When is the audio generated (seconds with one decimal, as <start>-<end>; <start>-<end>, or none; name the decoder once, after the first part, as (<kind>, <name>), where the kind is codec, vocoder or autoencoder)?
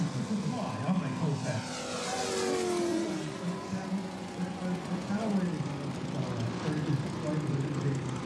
2.9-5.3 (vocoder, Vocos)